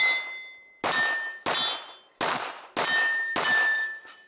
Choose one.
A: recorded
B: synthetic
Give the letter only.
A